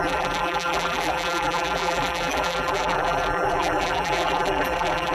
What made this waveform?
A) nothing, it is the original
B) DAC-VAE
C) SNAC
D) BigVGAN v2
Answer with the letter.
D